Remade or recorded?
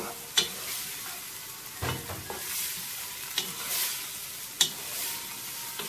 recorded